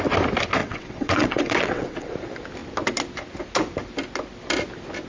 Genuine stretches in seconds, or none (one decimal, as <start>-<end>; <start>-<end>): 0.0-0.6; 2.1-5.1

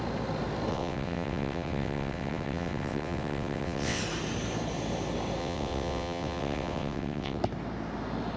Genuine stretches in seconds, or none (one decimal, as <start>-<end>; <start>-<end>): 0.0-0.7; 4.0-5.4; 7.4-8.4

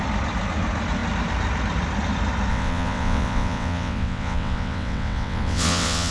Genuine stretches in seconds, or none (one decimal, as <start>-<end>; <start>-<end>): 0.0-2.5

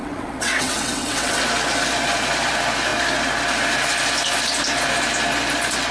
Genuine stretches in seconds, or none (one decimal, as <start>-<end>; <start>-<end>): 1.4-5.9

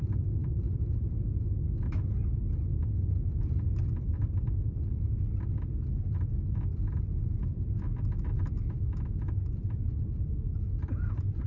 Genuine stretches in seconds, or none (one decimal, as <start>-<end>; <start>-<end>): 0.0-11.5